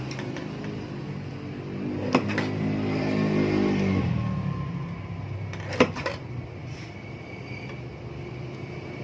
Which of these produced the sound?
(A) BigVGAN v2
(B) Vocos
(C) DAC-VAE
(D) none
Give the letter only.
D